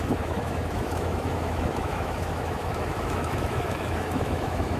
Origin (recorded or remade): remade